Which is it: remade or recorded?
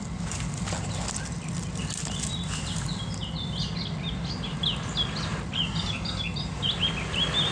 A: recorded